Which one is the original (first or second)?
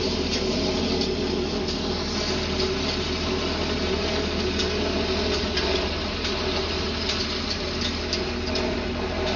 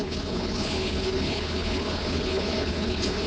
first